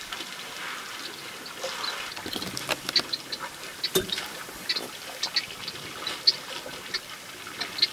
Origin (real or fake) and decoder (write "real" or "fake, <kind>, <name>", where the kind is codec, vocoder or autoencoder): real